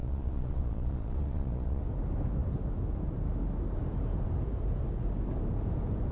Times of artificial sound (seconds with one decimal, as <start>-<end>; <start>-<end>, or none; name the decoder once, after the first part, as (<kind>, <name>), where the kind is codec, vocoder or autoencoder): 0.0-1.8 (vocoder, Vocos)